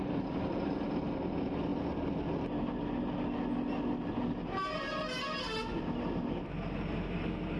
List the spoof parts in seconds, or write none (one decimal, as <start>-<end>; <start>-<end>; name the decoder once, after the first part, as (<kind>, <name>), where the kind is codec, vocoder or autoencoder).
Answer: none

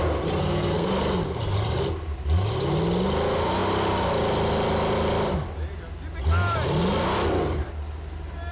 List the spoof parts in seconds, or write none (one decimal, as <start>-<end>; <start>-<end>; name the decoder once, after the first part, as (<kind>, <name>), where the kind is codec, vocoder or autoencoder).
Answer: 0.4-0.9 (codec, SNAC)

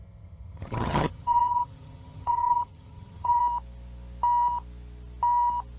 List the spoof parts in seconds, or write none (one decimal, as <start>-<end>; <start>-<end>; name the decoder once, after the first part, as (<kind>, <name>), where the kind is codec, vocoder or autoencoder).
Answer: 0.0-3.4 (vocoder, HiFi-GAN)

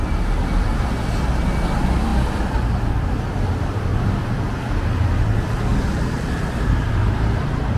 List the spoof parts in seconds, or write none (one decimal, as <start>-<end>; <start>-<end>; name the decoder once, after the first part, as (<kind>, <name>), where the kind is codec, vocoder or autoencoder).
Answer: 3.9-4.6 (vocoder, BigVGAN v2); 5.7-6.9

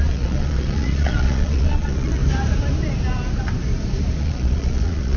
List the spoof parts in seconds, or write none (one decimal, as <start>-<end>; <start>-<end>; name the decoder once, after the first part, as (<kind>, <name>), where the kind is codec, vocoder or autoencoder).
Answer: 0.0-2.2 (vocoder, Vocos); 4.2-5.2

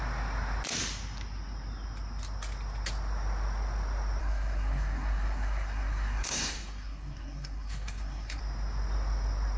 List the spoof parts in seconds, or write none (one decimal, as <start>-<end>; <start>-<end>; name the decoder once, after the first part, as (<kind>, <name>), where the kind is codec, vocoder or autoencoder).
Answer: 4.2-8.4 (codec, SNAC)

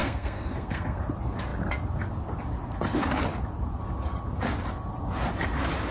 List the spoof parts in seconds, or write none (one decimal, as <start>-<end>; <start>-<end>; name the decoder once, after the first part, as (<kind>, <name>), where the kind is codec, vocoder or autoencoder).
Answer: 0.0-1.0 (codec, SNAC)